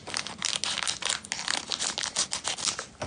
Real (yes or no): yes